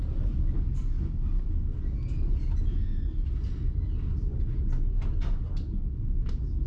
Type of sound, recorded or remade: recorded